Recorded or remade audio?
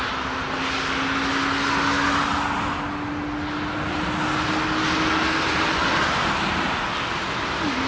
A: recorded